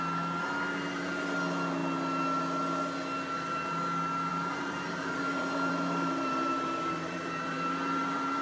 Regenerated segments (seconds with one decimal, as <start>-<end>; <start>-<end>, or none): 4.3-8.4